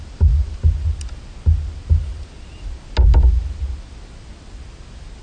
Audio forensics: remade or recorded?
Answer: recorded